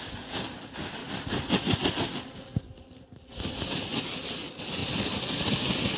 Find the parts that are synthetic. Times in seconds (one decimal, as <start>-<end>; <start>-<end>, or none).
none